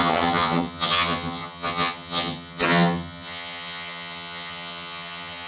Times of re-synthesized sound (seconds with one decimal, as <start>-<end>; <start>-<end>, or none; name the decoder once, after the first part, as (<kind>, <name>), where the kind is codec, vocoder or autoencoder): 0.0-5.5 (vocoder, HiFi-GAN)